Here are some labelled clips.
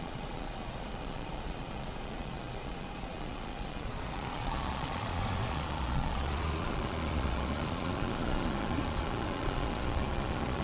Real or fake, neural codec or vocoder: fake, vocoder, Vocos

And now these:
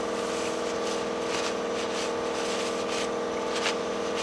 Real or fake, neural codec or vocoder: real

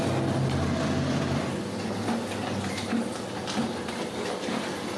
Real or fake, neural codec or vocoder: real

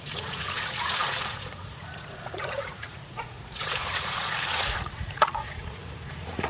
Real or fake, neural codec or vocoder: fake, vocoder, Vocos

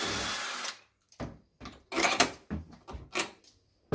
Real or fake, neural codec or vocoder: real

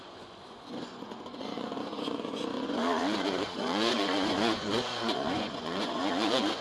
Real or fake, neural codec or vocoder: fake, vocoder, Vocos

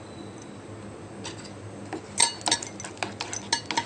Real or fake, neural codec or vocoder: real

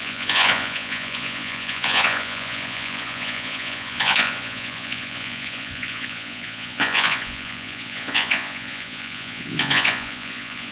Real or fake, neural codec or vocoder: fake, vocoder, Vocos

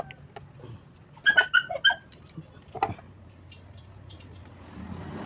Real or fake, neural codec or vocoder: real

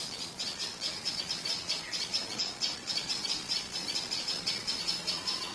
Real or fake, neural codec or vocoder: fake, vocoder, Vocos